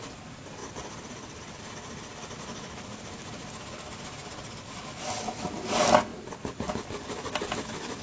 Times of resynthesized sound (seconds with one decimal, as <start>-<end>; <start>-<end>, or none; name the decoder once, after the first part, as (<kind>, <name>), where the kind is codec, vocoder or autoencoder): none